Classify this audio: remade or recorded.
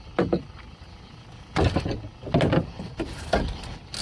recorded